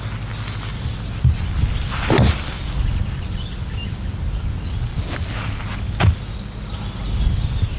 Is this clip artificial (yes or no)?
no